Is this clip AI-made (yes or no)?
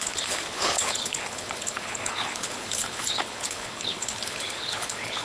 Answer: yes